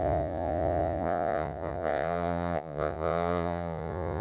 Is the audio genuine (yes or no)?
no